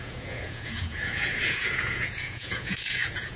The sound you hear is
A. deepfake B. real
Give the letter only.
A